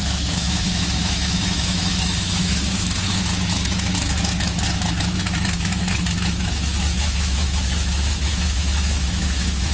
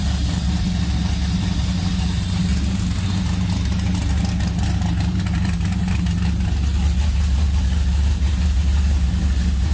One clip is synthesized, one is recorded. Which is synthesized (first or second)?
first